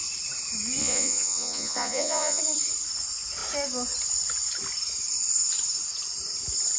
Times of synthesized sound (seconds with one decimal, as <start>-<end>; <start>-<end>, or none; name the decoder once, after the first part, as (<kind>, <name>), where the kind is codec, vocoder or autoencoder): 0.8-2.4 (vocoder, Vocos)